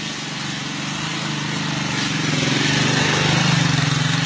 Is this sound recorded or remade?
recorded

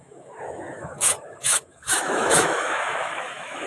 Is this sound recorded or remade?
remade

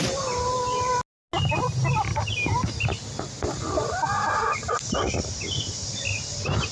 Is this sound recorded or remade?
recorded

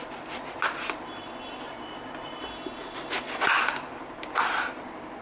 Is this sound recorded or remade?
recorded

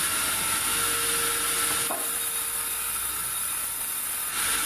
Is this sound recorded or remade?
recorded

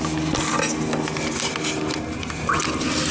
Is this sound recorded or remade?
recorded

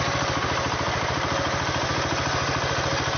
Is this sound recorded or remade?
recorded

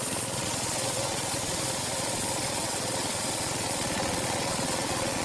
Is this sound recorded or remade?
remade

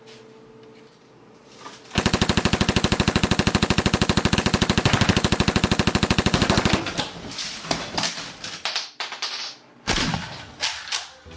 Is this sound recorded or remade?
recorded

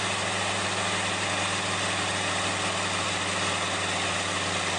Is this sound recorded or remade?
recorded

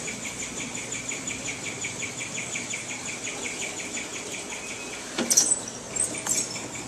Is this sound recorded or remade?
recorded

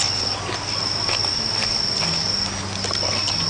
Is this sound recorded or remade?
recorded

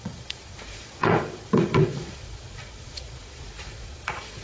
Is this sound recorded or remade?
remade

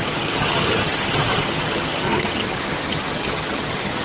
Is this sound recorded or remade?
remade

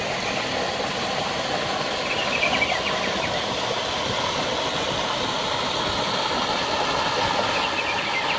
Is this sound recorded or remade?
recorded